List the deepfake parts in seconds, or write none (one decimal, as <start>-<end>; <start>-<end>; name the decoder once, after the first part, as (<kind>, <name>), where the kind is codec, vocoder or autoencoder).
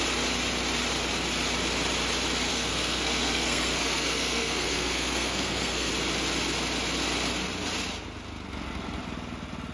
2.5-5.9 (codec, SNAC)